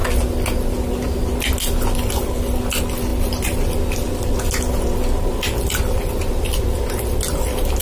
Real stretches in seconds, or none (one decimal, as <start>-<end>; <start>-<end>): 0.0-7.8